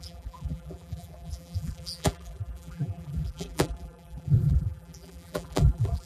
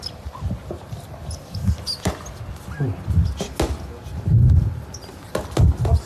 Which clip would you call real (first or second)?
second